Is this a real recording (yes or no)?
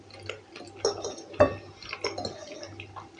yes